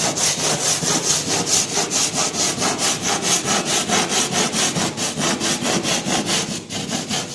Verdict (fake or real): real